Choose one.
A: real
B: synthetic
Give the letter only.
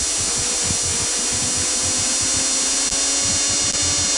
A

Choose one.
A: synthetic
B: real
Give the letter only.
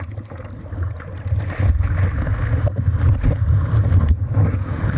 B